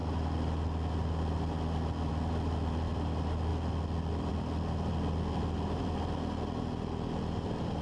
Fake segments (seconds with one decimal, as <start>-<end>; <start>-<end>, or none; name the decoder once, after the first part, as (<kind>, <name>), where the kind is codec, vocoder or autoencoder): 2.1-3.5 (vocoder, BigVGAN v2); 4.1-7.8